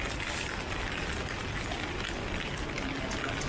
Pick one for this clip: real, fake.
real